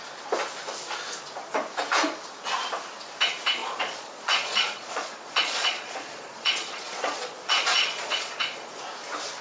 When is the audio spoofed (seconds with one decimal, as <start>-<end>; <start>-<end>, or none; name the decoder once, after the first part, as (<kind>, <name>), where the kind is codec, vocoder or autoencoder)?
3.6-8.7 (vocoder, Vocos)

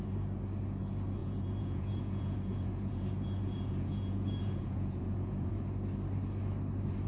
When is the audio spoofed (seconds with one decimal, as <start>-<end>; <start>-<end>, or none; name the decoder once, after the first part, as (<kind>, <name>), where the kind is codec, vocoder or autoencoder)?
1.2-5.5 (vocoder, Vocos)